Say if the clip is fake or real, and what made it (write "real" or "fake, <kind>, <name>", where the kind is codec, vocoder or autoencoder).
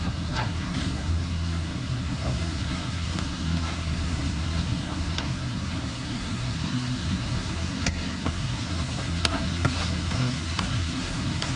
fake, codec, SNAC